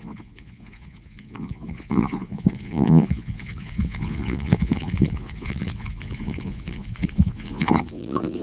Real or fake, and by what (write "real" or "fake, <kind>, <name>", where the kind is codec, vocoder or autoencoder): fake, vocoder, Vocos